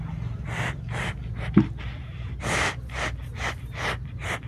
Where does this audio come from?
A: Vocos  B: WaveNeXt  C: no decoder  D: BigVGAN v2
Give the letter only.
C